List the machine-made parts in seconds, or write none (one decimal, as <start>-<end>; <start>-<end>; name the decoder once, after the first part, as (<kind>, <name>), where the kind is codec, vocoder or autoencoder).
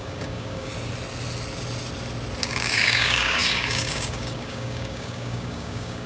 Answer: 0.0-0.7 (codec, DAC); 2.4-6.1